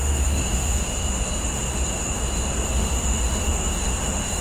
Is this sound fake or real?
fake